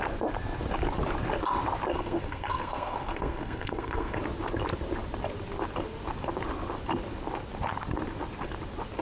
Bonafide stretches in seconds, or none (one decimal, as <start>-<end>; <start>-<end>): 0.0-1.9; 4.2-9.0